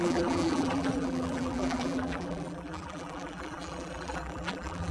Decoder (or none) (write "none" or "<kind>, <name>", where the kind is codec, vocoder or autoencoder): vocoder, BigVGAN v2